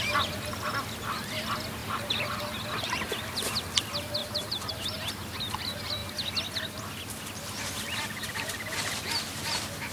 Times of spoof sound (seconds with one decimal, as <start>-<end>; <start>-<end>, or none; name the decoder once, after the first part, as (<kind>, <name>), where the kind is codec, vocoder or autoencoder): 1.8-2.4 (vocoder, BigVGAN v2); 4.2-4.7